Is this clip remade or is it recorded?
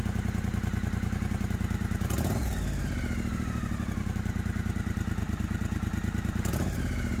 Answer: remade